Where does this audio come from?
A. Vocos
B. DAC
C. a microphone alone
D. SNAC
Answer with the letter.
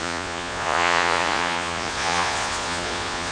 A